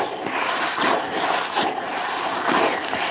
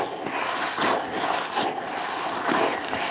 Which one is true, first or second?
second